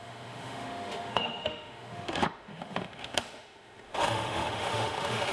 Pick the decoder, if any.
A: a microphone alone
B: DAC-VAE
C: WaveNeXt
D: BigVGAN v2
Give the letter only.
B